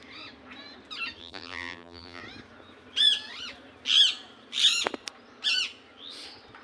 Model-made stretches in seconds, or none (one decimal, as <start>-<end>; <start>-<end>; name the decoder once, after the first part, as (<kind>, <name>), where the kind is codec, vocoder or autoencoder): 1.2-2.2 (vocoder, BigVGAN v2)